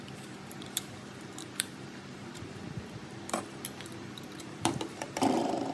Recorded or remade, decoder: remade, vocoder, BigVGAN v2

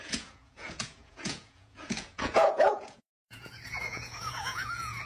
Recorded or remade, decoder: remade, vocoder, Vocos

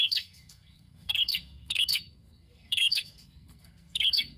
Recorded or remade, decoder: remade, codec, SNAC